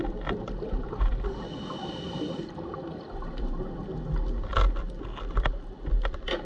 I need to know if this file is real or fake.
real